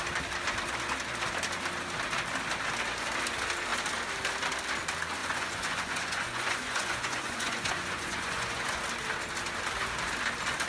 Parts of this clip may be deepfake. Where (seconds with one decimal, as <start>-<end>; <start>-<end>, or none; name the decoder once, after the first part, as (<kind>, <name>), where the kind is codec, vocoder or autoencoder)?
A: 5.2-8.8 (vocoder, Vocos)